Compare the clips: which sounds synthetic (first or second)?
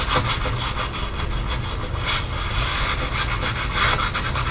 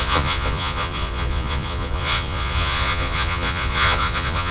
second